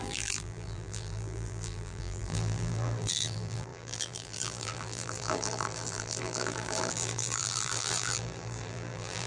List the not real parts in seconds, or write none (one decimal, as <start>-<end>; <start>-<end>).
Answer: 0.0-9.3